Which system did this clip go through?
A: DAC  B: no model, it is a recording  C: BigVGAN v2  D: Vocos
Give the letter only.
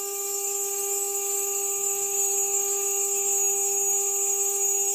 A